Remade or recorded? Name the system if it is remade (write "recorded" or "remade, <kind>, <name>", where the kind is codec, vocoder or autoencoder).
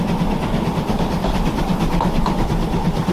recorded